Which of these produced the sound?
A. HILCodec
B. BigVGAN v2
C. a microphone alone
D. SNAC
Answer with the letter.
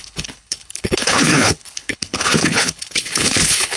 A